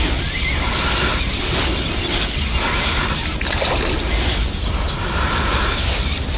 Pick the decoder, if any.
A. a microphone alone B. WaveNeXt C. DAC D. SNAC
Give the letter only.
A